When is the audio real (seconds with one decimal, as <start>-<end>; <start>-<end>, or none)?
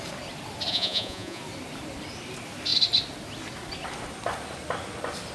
0.0-0.7; 1.4-5.3